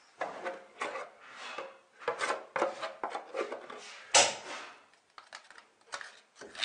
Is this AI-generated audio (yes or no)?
no